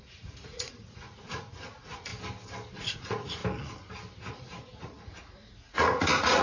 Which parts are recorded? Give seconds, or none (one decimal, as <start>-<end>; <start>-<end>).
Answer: 2.1-2.7; 3.4-4.3